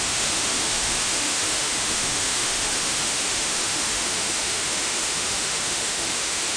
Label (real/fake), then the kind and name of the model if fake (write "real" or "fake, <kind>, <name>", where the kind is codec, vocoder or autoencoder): fake, autoencoder, DAC-VAE